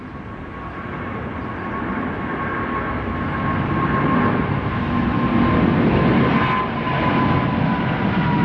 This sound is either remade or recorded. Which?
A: recorded